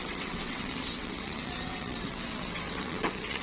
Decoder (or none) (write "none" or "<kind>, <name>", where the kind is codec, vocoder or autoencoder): vocoder, WaveNeXt